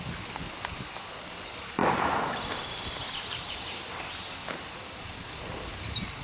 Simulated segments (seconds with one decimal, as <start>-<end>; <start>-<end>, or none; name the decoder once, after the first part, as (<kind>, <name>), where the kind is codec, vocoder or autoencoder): 1.8-2.6 (vocoder, BigVGAN v2); 3.0-3.8